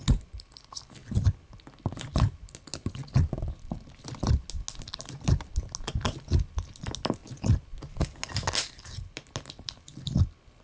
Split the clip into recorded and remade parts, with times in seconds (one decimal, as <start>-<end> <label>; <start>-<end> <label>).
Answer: 0.0-10.6 recorded